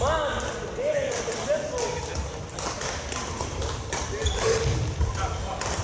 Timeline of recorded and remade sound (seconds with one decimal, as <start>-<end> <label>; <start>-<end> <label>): 0.0-5.8 recorded